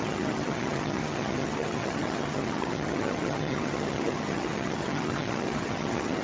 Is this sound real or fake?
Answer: fake